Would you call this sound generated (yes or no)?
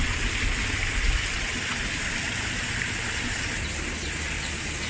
no